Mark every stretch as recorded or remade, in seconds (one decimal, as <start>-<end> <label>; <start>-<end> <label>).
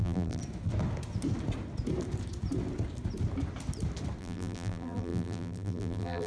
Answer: 0.0-0.4 remade; 0.4-4.2 recorded; 4.2-6.3 remade